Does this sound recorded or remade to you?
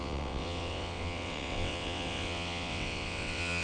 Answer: remade